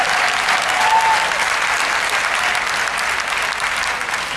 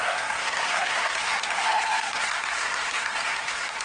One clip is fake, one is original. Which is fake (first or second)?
second